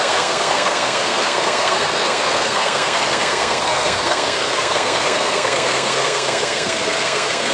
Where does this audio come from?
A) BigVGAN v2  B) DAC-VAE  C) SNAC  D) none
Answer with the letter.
C